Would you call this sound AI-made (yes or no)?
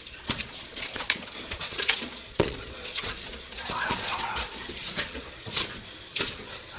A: yes